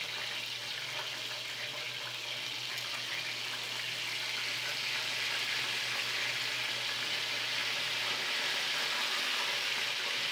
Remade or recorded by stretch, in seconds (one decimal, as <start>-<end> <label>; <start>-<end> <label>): 0.0-10.3 recorded